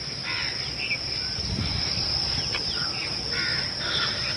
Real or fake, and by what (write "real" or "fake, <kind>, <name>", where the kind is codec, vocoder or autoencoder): real